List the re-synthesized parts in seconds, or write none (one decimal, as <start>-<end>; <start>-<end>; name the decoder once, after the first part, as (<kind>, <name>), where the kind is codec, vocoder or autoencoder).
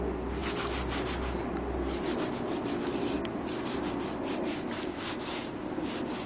none